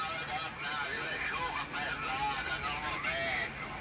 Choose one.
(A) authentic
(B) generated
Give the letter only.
A